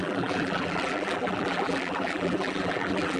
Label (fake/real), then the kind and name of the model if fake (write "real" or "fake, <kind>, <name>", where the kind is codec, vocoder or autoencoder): fake, vocoder, BigVGAN v2